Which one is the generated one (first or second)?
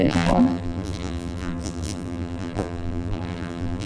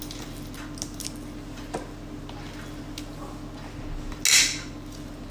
first